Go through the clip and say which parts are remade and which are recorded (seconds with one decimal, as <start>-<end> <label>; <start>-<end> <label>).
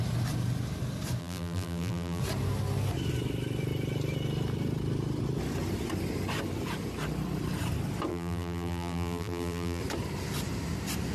0.0-1.2 recorded; 1.2-2.2 remade; 2.2-8.1 recorded; 8.1-9.8 remade; 9.8-11.1 recorded